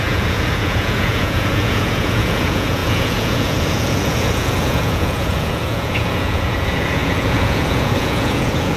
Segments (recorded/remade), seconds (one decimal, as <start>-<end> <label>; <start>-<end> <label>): 0.0-8.8 remade